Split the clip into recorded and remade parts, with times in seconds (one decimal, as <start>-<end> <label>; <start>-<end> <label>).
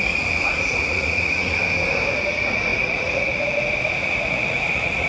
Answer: 0.0-1.6 remade; 1.6-2.1 recorded; 2.1-5.1 remade